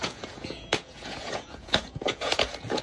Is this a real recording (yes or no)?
no